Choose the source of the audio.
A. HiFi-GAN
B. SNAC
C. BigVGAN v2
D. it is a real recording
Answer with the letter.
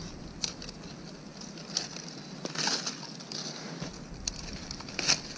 D